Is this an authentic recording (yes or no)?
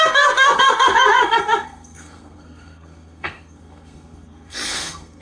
no